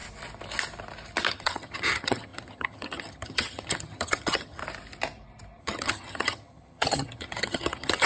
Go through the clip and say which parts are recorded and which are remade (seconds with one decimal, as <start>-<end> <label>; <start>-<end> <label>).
0.0-1.3 recorded; 1.3-4.6 remade; 4.6-5.6 recorded; 5.6-8.1 remade